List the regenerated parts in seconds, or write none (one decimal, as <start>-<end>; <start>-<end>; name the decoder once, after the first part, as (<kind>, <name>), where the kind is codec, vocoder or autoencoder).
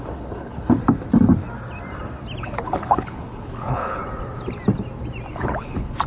0.0-0.8 (codec, HILCodec); 2.4-4.0; 5.3-6.1